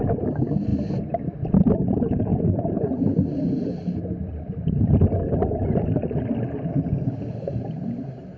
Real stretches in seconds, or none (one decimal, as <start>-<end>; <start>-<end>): 0.0-8.4

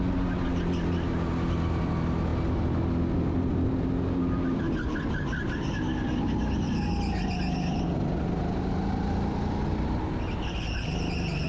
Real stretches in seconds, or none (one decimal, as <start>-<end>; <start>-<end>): 0.0-11.5

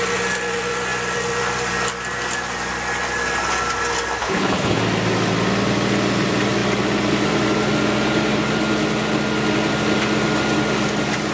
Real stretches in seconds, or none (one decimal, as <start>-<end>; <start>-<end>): 0.0-4.2; 4.8-11.3

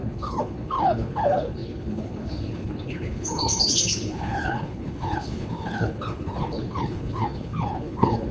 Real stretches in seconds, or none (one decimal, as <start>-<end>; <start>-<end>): none